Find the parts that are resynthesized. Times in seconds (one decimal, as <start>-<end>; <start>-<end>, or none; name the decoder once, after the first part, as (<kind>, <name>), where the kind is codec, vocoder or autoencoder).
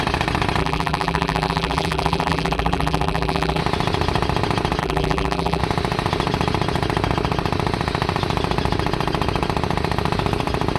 0.6-3.6 (vocoder, BigVGAN v2); 4.8-5.6